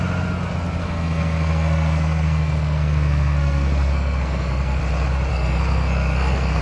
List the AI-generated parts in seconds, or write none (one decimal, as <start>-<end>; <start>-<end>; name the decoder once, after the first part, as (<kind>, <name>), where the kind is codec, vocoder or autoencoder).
0.8-4.8 (codec, SNAC); 5.3-6.6